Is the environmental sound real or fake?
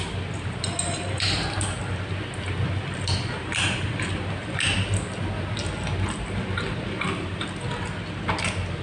real